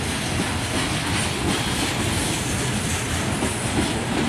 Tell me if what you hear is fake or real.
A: real